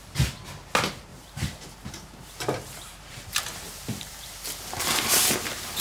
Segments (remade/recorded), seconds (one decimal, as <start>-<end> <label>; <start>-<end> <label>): 0.0-1.1 recorded; 1.1-4.3 remade; 4.3-5.8 recorded